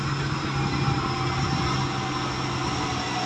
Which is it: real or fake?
real